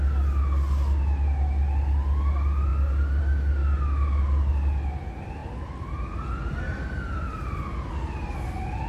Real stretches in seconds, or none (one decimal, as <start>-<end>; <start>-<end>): 0.0-8.9